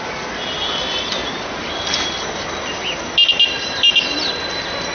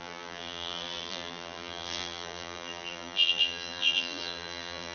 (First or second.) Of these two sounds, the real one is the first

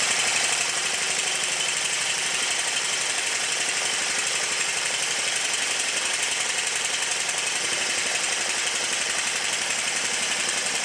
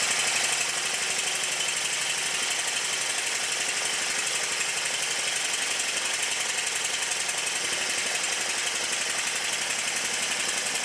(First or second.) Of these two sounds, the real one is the second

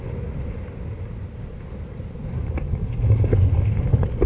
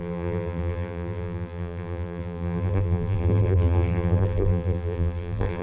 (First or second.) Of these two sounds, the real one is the first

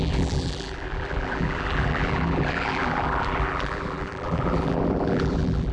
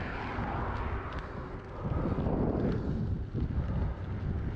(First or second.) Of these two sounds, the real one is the second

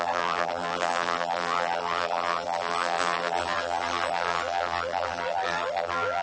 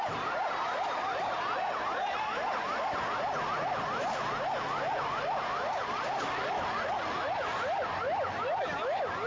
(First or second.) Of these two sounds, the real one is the second